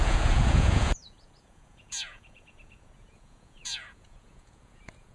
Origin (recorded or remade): remade